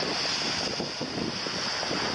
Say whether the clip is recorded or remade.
recorded